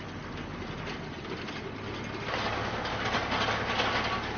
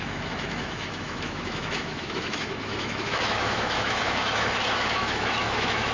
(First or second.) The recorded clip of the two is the first